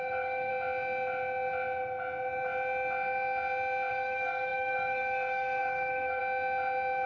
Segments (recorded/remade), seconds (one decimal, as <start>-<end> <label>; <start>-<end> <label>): 0.0-0.5 remade; 0.5-3.9 recorded; 3.9-6.2 remade; 6.2-7.1 recorded